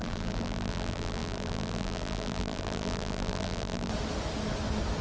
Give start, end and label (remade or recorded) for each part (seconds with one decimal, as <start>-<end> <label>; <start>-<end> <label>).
0.0-3.9 remade; 3.9-5.0 recorded